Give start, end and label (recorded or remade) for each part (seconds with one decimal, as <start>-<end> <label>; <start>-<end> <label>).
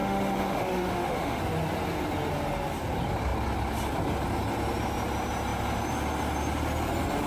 0.0-1.4 remade; 1.4-7.3 recorded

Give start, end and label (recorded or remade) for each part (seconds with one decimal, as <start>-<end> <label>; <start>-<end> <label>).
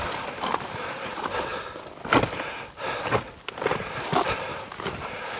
0.0-1.5 remade; 1.5-4.0 recorded; 4.0-5.4 remade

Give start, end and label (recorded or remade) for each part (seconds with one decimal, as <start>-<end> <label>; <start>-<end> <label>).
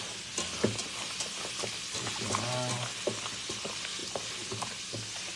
0.0-5.4 recorded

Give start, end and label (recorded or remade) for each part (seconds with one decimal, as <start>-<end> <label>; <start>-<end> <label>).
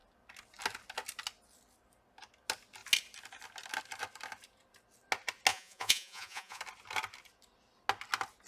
0.0-5.5 recorded; 5.5-6.6 remade; 6.6-8.5 recorded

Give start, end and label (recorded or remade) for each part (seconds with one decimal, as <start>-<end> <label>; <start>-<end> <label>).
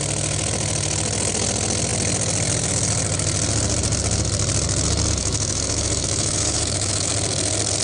0.0-5.2 recorded; 5.2-7.1 remade; 7.1-7.8 recorded